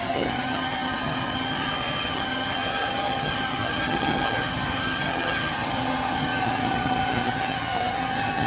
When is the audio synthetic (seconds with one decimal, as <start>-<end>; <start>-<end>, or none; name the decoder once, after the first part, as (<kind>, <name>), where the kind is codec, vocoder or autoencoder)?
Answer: 0.0-8.5 (vocoder, HiFi-GAN)